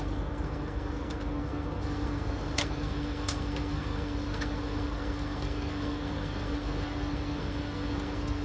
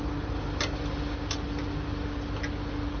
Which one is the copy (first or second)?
first